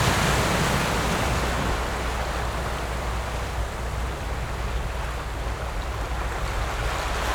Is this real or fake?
real